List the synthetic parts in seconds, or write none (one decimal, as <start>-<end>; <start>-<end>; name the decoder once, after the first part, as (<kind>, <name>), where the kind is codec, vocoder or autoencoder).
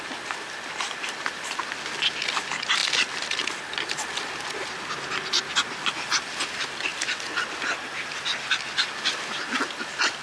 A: none